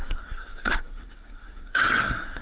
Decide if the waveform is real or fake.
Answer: fake